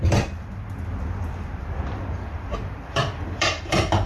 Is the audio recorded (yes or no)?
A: no